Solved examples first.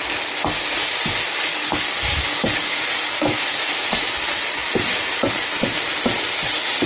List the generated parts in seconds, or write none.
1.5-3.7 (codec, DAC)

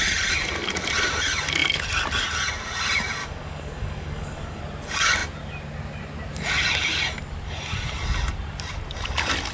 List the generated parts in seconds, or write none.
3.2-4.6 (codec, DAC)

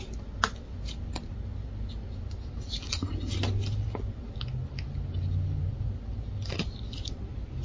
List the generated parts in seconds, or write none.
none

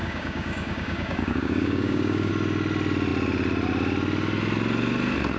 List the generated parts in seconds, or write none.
0.0-2.3 (codec, DAC)

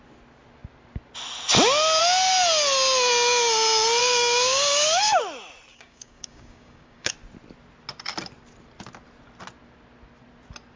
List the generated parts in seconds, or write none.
4.0-5.2 (codec, DAC); 5.7-7.1

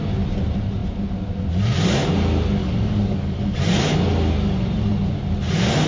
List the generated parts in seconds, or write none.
2.6-3.6 (codec, DAC)